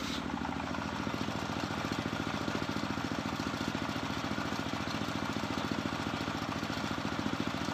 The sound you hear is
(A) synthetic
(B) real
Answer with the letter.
B